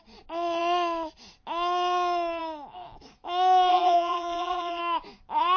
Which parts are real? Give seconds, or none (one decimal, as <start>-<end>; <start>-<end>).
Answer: 0.0-3.7; 4.8-5.6